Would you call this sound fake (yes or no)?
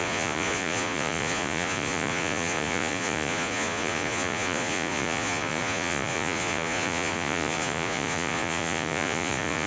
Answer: yes